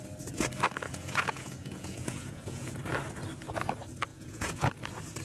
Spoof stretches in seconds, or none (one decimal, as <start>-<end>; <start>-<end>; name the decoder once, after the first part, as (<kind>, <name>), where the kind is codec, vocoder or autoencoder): 0.9-2.8 (vocoder, Vocos); 4.1-4.7